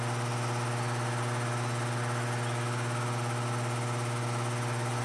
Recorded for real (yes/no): yes